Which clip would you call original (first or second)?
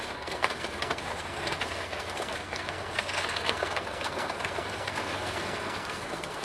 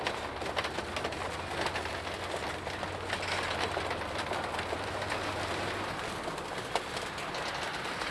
second